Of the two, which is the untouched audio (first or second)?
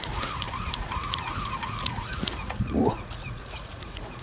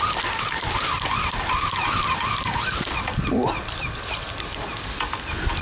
second